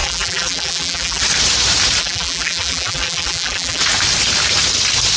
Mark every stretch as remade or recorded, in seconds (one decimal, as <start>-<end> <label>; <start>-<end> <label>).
0.0-1.2 remade; 1.2-2.0 recorded; 2.0-3.8 remade; 3.8-5.2 recorded